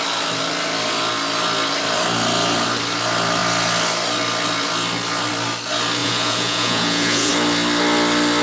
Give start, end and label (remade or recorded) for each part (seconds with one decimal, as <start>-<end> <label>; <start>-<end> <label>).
0.0-6.0 recorded; 6.0-7.3 remade; 7.3-8.4 recorded